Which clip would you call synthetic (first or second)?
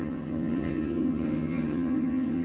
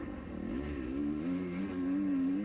first